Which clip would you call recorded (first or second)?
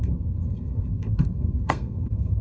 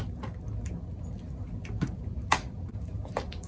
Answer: second